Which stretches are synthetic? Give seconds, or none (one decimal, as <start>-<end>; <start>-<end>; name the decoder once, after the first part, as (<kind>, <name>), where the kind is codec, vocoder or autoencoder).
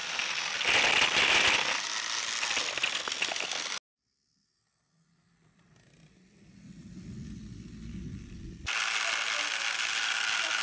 none